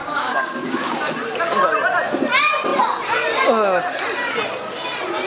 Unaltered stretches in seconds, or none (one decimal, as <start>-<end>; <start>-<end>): 1.0-5.3